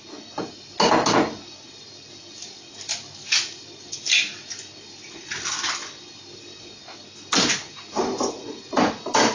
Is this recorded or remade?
recorded